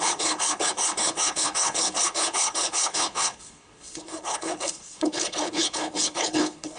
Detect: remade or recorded remade